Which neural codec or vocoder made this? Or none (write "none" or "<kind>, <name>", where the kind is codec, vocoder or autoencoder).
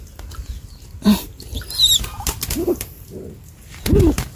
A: none